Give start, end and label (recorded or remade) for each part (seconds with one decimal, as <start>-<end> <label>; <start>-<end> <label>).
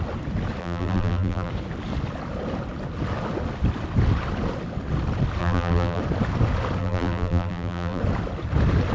0.0-0.6 recorded; 0.6-1.5 remade; 1.5-5.4 recorded; 5.4-6.0 remade; 6.0-6.8 recorded; 6.8-8.0 remade; 8.0-8.9 recorded